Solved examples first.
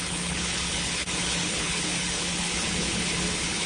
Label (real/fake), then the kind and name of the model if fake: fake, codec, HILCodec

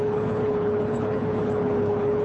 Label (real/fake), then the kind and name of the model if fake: fake, codec, HILCodec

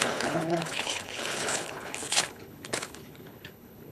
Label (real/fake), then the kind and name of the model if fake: fake, codec, HILCodec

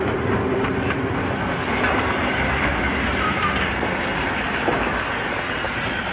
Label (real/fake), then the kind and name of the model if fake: real